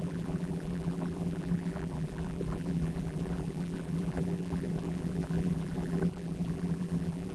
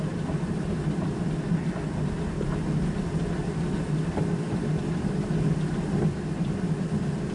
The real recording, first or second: second